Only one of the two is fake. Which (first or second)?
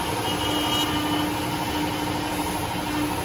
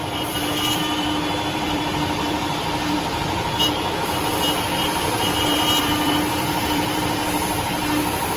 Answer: second